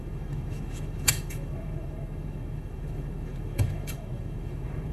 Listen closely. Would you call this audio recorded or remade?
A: remade